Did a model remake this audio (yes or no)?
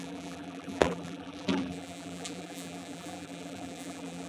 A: yes